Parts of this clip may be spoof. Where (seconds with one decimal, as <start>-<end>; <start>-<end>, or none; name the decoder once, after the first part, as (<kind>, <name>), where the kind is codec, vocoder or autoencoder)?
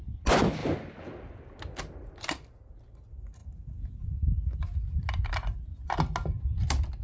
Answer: none